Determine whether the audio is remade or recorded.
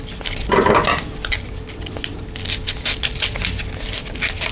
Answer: recorded